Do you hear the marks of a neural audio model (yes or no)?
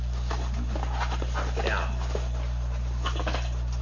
no